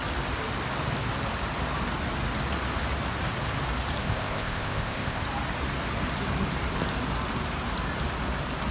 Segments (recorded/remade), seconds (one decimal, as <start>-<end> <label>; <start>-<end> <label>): 0.0-4.0 recorded; 4.0-5.2 remade; 5.2-8.7 recorded